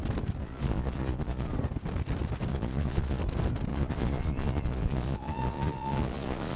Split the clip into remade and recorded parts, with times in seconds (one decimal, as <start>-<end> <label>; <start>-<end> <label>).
0.0-0.4 recorded; 0.4-1.5 remade; 1.5-2.5 recorded; 2.5-3.2 remade; 3.2-3.7 recorded; 3.7-6.6 remade